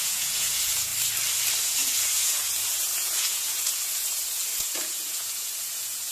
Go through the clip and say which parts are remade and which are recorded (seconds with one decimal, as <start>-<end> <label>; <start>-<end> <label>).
0.0-0.9 remade; 0.9-1.6 recorded; 1.6-6.1 remade